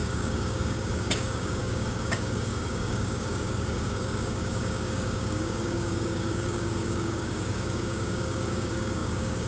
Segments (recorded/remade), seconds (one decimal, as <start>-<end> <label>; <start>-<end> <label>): 0.0-9.5 remade